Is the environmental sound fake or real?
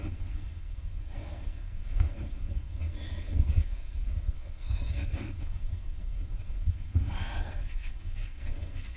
fake